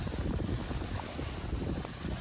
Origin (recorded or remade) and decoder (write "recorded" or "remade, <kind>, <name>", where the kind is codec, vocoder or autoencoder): recorded